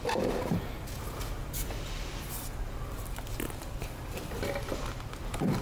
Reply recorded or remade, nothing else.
remade